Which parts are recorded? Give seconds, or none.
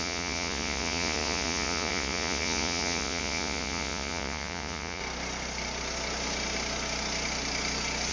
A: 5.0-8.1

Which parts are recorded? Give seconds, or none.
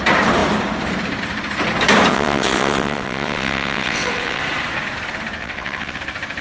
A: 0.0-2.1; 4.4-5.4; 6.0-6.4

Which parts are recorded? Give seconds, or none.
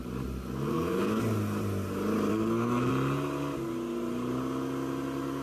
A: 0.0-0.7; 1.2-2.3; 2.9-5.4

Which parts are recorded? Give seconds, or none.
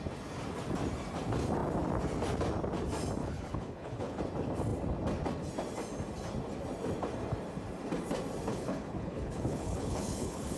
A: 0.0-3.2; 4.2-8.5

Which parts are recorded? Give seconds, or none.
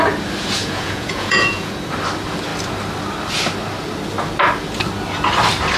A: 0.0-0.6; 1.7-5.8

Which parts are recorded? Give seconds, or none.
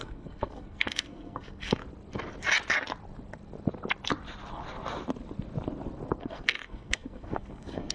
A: 1.8-6.2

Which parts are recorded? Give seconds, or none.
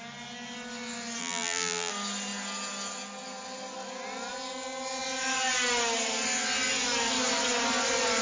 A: 0.0-1.2; 1.9-8.2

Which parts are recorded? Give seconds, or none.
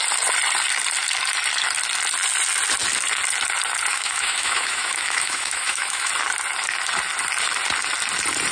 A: 0.0-3.9; 6.1-8.5